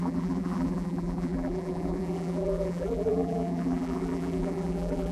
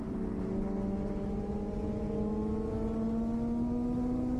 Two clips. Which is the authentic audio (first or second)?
second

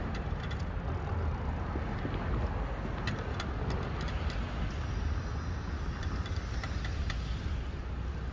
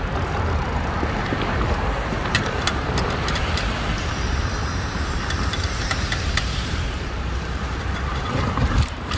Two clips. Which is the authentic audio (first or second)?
first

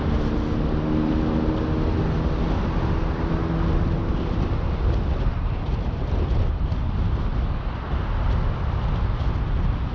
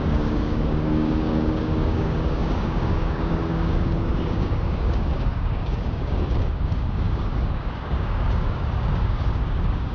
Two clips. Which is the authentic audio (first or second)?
first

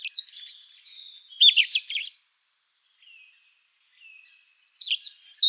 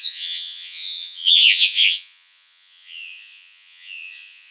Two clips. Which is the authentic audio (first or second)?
first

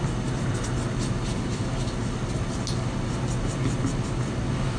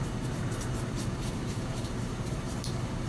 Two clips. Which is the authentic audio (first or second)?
first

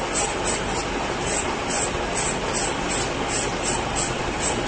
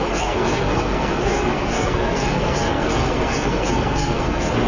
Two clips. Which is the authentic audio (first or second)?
first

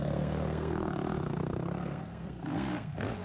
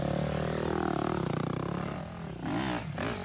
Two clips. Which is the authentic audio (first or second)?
second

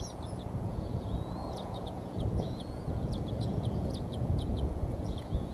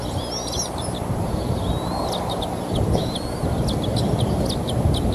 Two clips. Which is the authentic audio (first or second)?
second